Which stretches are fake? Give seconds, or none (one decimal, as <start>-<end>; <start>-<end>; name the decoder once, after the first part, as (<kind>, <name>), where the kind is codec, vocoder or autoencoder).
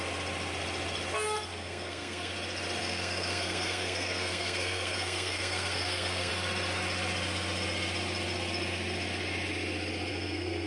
1.5-2.3 (codec, SNAC); 2.8-6.3; 10.1-10.7